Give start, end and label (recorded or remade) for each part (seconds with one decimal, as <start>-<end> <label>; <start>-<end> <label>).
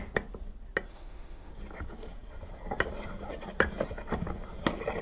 0.0-0.9 recorded; 0.9-1.5 remade; 1.5-5.0 recorded